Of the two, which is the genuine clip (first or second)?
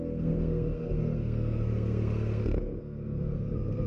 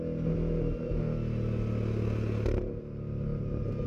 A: second